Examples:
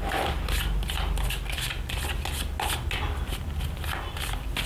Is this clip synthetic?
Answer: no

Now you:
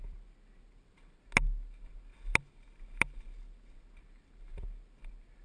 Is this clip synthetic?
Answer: no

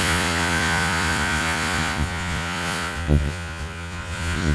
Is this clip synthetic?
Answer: yes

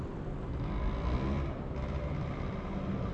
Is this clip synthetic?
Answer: no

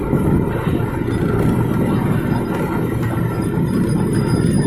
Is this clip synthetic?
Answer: no